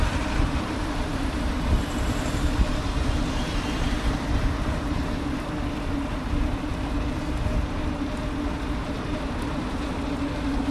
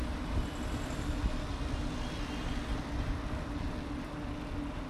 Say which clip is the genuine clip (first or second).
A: second